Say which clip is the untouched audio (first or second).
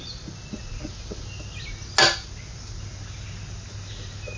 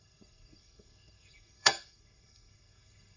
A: first